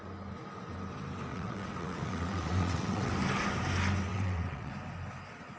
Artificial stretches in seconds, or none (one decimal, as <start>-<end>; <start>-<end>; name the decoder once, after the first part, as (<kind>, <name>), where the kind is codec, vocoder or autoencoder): 1.3-3.1 (vocoder, WaveNeXt); 4.1-4.7